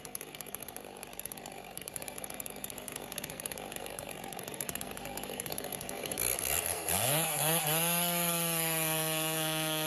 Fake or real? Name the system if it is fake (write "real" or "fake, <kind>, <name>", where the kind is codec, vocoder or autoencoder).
fake, codec, SNAC